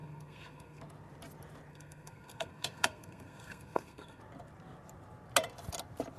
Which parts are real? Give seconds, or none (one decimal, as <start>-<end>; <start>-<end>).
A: 0.8-1.7; 4.2-6.2